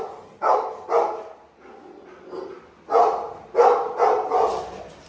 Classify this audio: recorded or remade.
recorded